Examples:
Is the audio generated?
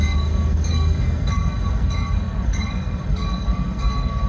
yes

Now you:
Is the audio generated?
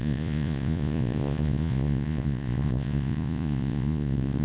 yes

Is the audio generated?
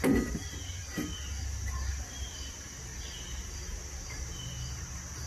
no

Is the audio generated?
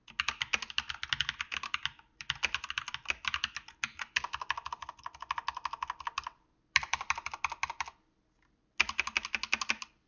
no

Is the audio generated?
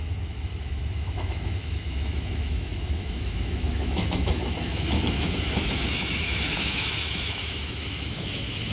yes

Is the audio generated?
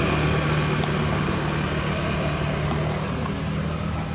no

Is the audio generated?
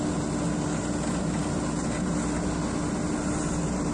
no